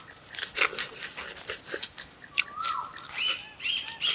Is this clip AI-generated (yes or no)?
yes